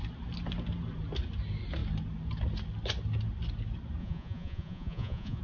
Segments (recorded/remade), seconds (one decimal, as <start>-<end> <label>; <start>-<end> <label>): 0.0-4.0 recorded; 4.0-5.4 remade